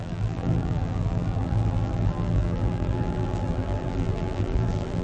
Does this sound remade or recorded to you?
remade